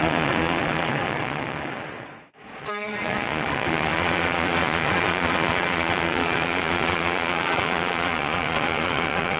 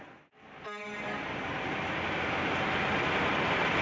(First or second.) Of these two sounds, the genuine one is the second